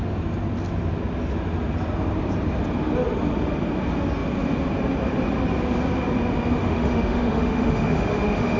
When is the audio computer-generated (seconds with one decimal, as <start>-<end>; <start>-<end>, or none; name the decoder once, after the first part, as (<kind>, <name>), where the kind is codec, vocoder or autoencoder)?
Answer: 6.6-8.6 (autoencoder, DAC-VAE)